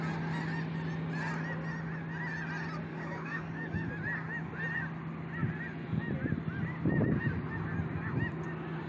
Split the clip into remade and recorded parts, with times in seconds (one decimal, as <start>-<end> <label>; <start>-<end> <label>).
0.0-2.9 recorded; 2.9-3.9 remade; 3.9-8.9 recorded

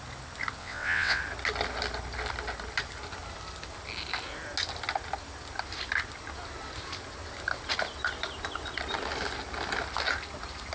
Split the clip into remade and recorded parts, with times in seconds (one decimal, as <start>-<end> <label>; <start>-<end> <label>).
0.0-0.6 recorded; 0.6-1.2 remade; 1.2-10.7 recorded

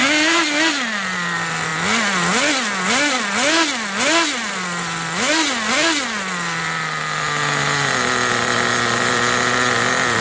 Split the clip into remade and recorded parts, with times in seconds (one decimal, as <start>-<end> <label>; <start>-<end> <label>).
0.0-10.2 recorded

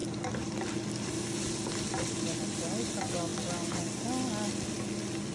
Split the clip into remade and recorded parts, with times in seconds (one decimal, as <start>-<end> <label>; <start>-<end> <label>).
0.0-5.3 recorded

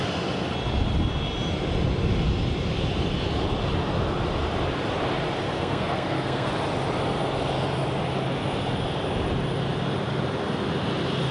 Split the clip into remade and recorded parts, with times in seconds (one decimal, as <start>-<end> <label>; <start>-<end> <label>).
0.0-5.5 recorded; 5.5-6.5 remade; 6.5-11.3 recorded